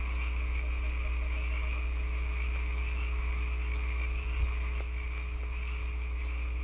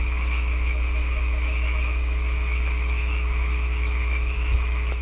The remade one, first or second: second